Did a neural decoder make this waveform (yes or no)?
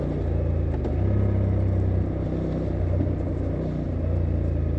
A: no